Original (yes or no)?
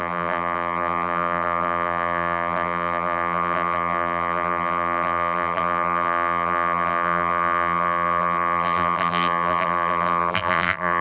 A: no